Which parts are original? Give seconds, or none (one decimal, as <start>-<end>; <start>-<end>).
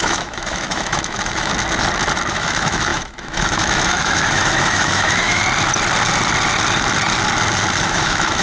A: 1.5-2.3; 5.4-7.8